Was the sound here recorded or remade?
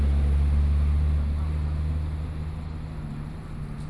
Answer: recorded